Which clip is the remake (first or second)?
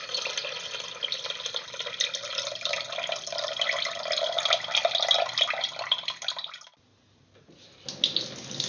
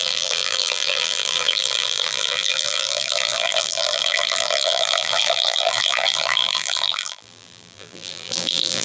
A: second